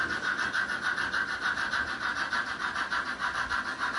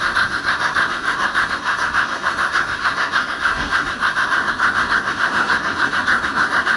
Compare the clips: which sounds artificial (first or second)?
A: second